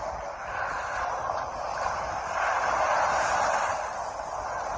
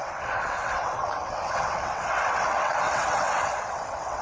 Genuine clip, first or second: first